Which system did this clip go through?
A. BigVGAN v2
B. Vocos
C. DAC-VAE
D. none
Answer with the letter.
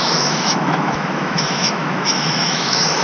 C